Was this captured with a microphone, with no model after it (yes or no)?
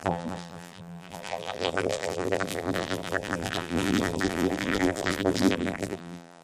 no